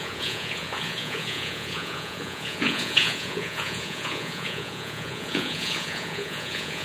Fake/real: fake